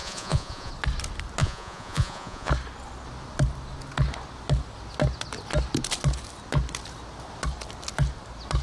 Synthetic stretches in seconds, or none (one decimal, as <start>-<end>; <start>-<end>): 0.0-0.7; 1.4-2.5